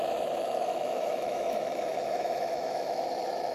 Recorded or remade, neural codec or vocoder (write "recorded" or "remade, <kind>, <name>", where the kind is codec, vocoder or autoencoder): remade, autoencoder, DAC-VAE